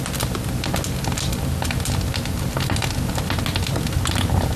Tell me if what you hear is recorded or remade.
recorded